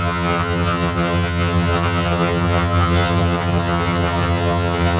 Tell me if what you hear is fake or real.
fake